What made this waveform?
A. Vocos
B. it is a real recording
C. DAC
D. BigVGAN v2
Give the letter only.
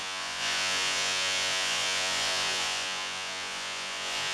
A